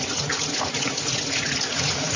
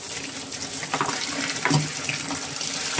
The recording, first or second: second